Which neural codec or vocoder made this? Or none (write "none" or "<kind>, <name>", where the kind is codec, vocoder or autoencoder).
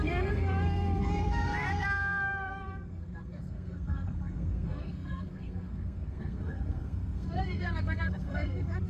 codec, SNAC